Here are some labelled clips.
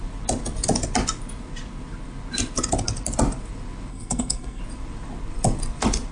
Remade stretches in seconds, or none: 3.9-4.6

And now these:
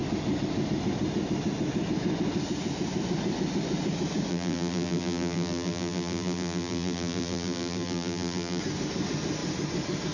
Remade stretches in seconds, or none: 4.3-8.6

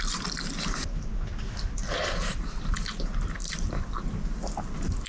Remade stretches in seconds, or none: 1.8-4.4

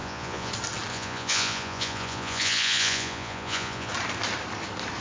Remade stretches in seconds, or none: 0.0-0.5; 0.9-3.9

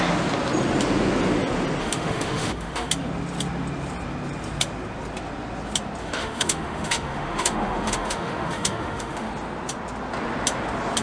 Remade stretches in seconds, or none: 1.8-2.9; 6.0-9.3

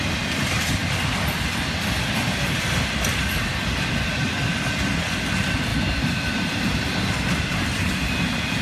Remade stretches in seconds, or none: 0.8-3.9; 5.7-7.4

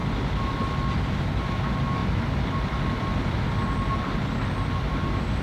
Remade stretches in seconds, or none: none

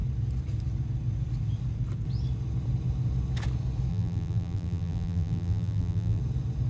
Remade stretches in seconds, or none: 3.9-6.2